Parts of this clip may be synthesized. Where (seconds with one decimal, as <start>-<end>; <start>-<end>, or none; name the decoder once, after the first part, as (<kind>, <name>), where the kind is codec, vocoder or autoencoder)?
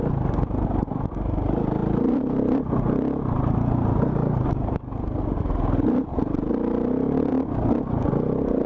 4.2-4.7 (vocoder, BigVGAN v2)